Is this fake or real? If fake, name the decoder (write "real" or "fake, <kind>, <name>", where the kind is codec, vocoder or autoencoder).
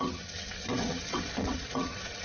fake, vocoder, WaveNeXt